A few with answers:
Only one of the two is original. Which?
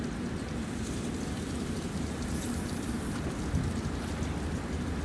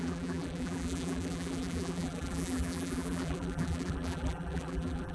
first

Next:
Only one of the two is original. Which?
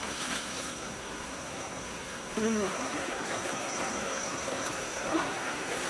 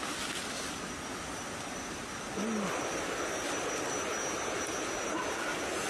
second